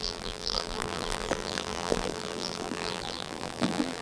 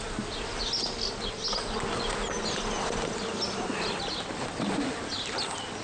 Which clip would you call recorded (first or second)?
second